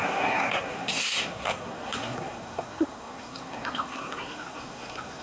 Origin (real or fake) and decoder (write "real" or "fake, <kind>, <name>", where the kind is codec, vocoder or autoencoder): fake, codec, SNAC